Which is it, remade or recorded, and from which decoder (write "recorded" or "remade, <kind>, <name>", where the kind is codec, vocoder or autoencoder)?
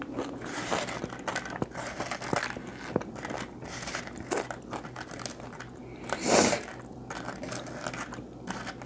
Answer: recorded